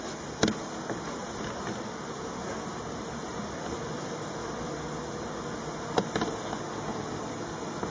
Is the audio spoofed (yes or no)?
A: no